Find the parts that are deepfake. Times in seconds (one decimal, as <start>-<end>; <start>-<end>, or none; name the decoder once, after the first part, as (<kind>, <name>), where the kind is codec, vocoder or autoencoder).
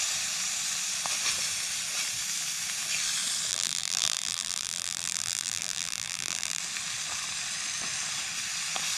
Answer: 3.5-6.6 (vocoder, BigVGAN v2)